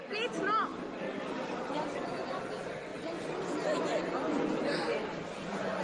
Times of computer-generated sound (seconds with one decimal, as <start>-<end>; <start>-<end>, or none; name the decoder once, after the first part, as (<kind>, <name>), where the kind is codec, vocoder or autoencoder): 0.7-2.5 (vocoder, BigVGAN v2)